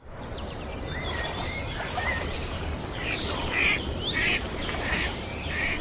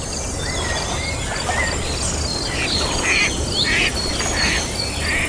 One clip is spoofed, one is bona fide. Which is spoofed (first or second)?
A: first